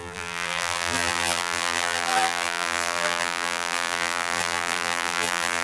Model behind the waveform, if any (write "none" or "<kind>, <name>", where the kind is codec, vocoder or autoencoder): vocoder, BigVGAN v2